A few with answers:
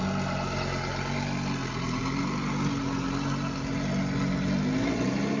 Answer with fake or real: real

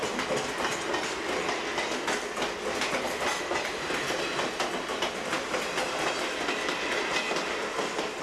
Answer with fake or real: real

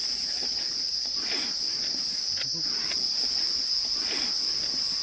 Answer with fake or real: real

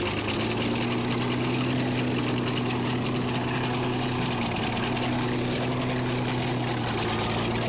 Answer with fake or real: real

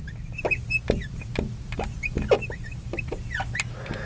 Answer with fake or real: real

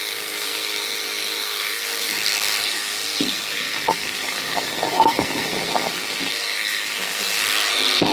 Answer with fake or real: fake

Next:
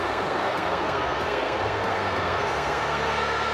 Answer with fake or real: fake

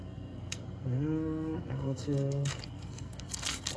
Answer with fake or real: fake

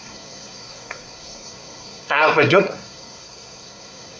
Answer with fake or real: fake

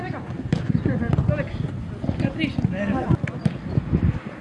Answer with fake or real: real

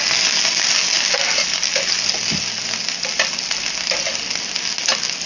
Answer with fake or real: real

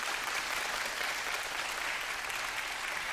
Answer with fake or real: real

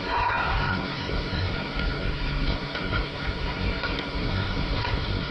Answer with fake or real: fake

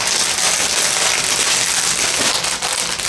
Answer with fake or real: real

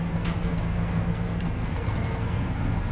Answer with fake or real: fake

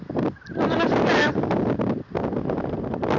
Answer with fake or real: real